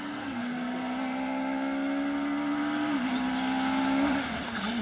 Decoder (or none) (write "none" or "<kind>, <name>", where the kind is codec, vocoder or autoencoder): none